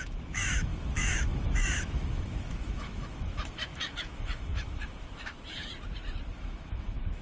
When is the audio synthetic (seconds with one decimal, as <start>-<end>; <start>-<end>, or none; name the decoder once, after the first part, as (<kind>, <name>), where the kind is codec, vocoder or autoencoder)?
0.0-5.7 (autoencoder, DAC-VAE); 6.3-7.2